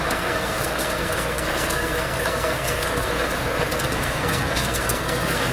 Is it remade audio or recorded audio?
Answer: remade